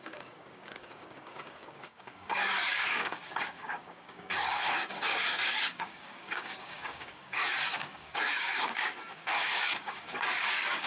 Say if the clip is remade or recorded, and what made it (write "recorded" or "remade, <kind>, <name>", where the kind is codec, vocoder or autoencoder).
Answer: remade, codec, DAC